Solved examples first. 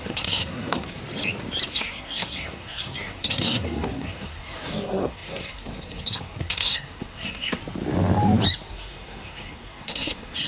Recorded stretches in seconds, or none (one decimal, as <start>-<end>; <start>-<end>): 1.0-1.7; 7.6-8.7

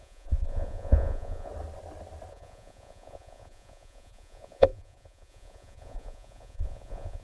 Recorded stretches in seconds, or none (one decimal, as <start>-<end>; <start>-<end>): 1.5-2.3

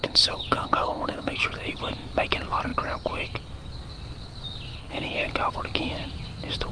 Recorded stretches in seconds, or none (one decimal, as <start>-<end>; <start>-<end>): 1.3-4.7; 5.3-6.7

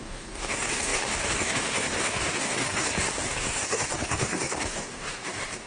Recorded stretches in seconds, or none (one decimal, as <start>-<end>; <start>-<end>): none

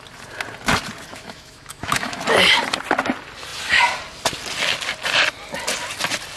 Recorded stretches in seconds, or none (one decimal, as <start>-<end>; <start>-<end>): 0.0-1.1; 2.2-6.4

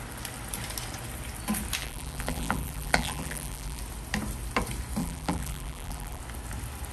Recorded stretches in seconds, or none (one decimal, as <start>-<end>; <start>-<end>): 0.0-1.8; 3.8-5.0; 6.2-6.9

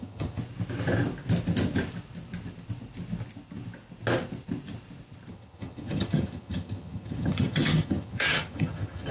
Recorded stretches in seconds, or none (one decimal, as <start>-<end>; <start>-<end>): 0.4-5.3